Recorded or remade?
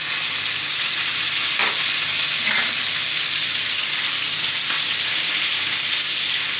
recorded